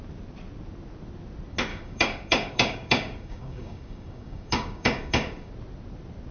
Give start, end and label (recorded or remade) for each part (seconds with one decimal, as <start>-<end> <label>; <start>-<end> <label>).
0.0-1.7 recorded; 1.7-5.5 remade; 5.5-6.3 recorded